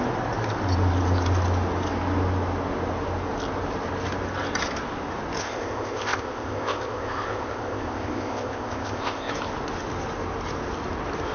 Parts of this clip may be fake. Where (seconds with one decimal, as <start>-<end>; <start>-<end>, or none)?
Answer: 5.4-9.3